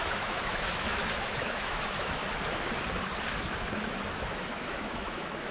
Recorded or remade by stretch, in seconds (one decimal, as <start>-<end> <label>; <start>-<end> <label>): 0.0-2.2 remade; 2.2-3.9 recorded; 3.9-5.5 remade